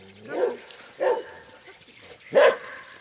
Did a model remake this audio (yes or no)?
no